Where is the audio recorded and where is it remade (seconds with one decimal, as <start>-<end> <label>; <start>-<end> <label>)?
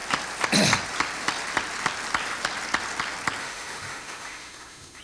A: 0.0-3.4 recorded; 3.4-5.0 remade